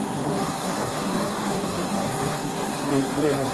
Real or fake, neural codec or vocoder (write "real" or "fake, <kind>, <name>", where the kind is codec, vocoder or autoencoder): fake, codec, SNAC